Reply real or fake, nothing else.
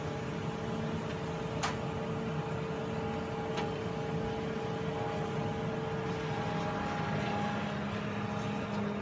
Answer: real